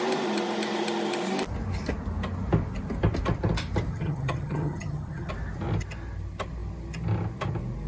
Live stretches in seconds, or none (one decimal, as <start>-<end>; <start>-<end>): 0.0-3.9; 5.3-7.9